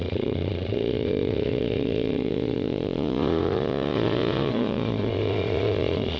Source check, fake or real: fake